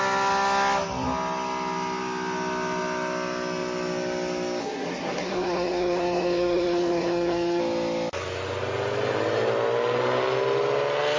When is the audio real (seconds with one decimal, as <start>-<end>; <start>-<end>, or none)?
0.0-4.6; 7.6-11.2